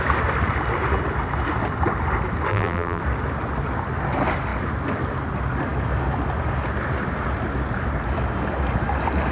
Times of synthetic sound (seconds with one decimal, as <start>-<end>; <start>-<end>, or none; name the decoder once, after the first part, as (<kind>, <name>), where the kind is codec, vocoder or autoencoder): 2.5-3.0 (vocoder, BigVGAN v2)